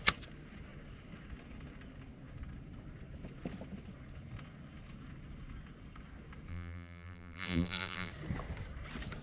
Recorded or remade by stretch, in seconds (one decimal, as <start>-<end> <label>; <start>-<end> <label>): 0.0-6.5 recorded; 6.5-8.1 remade; 8.1-9.2 recorded